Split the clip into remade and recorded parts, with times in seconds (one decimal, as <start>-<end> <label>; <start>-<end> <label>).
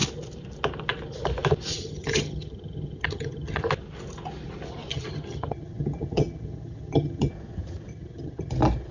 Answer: 0.0-1.7 recorded; 1.7-3.6 remade; 3.6-4.9 recorded; 4.9-7.3 remade; 7.3-7.9 recorded; 7.9-8.5 remade; 8.5-8.9 recorded